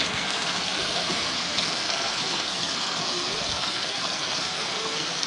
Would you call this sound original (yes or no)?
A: no